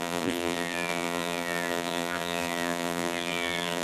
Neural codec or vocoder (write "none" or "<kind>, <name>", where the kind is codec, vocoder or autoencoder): vocoder, BigVGAN v2